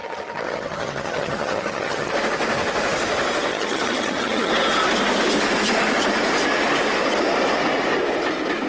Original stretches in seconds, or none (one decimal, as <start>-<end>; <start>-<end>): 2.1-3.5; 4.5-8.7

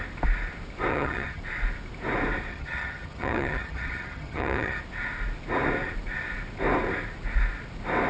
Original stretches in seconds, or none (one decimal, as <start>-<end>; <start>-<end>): 0.0-0.9; 1.4-2.5; 4.8-8.1

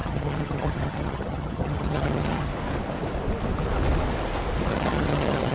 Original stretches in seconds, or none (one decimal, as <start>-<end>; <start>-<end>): 2.5-4.7